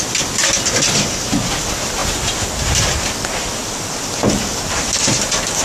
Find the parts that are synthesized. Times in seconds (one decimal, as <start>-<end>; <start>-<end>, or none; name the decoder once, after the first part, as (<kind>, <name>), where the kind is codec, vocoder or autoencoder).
none